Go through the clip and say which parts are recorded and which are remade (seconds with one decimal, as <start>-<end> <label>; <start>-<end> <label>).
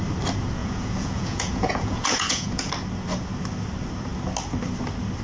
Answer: 0.0-0.6 recorded; 0.6-2.7 remade; 2.7-5.2 recorded